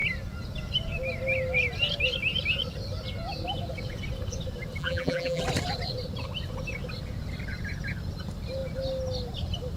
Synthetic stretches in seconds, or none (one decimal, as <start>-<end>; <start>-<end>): 4.8-5.4